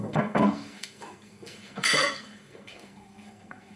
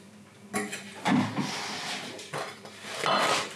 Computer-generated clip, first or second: first